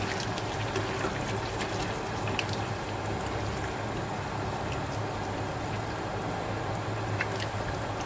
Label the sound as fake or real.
real